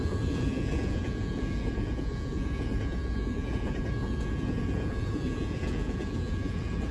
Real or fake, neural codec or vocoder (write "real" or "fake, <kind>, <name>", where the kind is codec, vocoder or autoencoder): fake, vocoder, Vocos